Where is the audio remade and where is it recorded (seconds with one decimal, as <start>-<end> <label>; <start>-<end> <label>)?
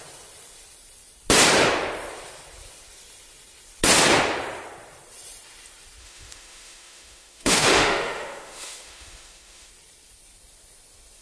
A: 0.0-6.0 recorded; 6.0-9.7 remade; 9.7-11.2 recorded